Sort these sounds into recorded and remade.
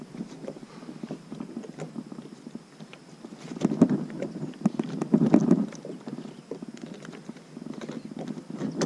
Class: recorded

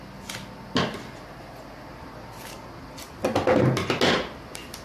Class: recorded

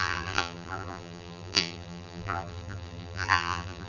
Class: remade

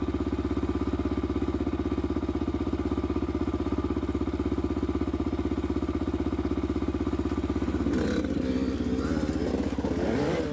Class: recorded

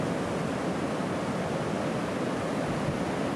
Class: recorded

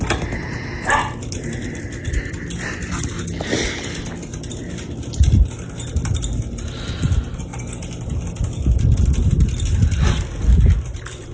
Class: recorded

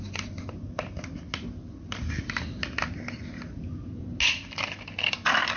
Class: recorded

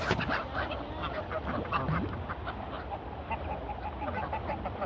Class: recorded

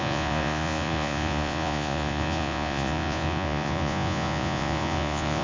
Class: remade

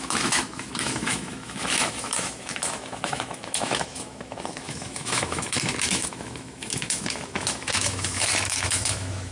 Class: remade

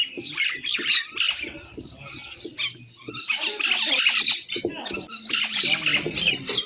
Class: recorded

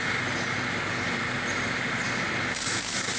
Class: recorded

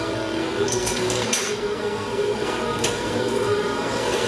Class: remade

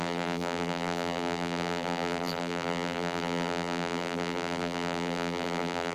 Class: remade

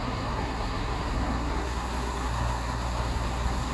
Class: remade